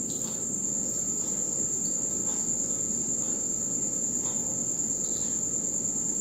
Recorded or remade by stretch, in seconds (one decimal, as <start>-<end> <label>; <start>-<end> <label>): 0.0-2.2 remade; 2.2-3.0 recorded; 3.0-4.5 remade; 4.5-5.7 recorded; 5.7-6.2 remade